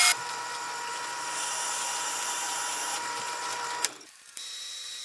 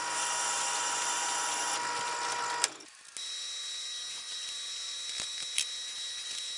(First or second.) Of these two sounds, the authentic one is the second